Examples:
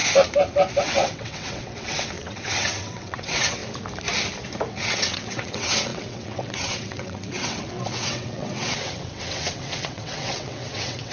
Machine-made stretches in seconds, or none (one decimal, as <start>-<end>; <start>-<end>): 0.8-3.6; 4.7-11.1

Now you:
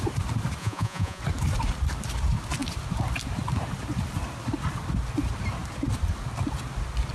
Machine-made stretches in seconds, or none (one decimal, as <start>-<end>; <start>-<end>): 0.6-1.2

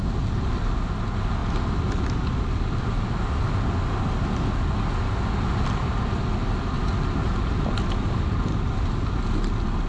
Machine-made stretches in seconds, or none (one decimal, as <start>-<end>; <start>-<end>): none

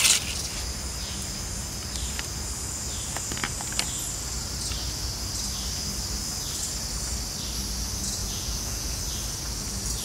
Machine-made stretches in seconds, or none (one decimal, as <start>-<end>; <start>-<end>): 8.2-9.0

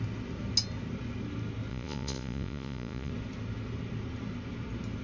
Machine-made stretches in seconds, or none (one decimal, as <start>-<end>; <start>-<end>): 1.7-3.1